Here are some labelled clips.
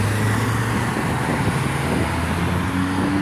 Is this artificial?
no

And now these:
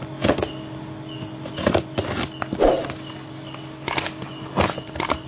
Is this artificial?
no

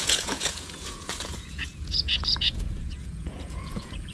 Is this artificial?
yes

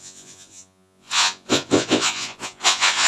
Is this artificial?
yes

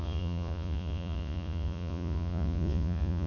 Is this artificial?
yes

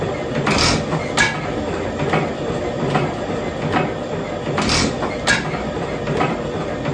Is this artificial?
no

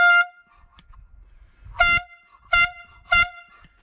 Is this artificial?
no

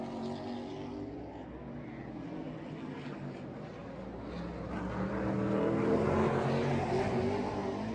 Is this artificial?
no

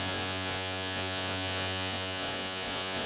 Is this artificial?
yes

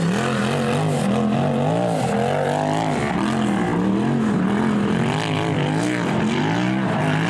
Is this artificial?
no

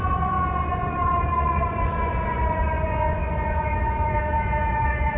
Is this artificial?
yes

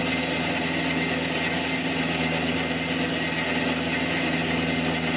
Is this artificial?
no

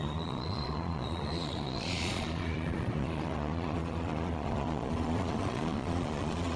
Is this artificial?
yes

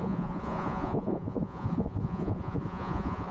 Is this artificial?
yes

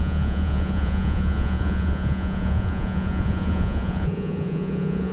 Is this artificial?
yes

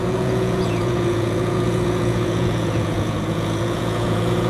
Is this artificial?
yes